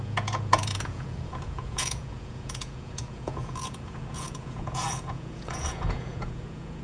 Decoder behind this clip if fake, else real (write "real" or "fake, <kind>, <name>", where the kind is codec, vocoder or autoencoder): fake, vocoder, Vocos